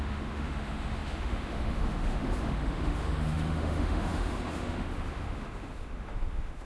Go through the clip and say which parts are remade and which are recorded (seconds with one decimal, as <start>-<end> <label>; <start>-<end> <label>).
0.0-6.6 remade